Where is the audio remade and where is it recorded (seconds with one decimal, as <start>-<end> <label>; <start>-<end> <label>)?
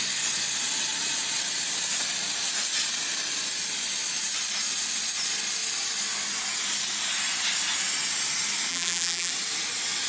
0.0-8.7 recorded; 8.7-9.3 remade; 9.3-10.1 recorded